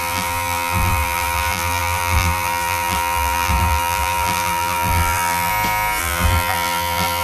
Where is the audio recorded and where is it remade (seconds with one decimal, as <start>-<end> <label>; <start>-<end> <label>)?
0.0-5.5 remade; 5.5-6.0 recorded; 6.0-7.2 remade